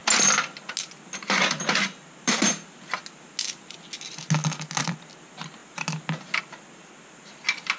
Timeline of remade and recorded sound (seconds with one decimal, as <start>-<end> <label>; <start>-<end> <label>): 0.0-7.8 recorded